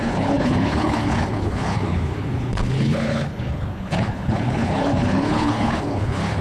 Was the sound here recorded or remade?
remade